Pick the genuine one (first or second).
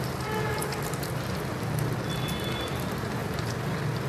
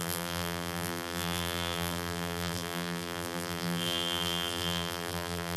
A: first